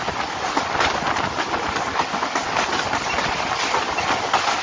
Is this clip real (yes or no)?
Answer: yes